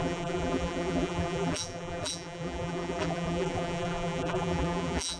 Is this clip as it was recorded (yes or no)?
no